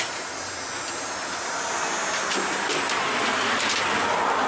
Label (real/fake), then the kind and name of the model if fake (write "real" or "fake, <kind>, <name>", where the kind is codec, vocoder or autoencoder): real